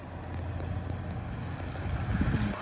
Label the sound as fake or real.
real